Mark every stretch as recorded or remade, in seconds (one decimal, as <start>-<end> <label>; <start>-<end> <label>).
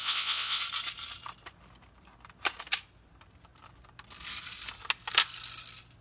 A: 0.0-0.6 remade; 0.6-6.0 recorded